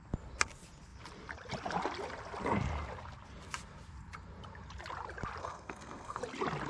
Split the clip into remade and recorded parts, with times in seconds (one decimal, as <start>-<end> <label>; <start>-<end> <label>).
0.0-5.4 recorded; 5.4-6.2 remade; 6.2-6.7 recorded